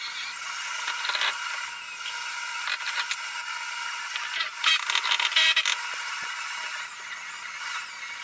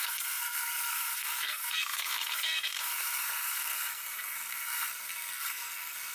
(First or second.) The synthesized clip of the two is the second